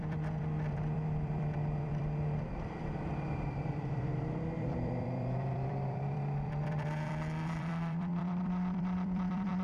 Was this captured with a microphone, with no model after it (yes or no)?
no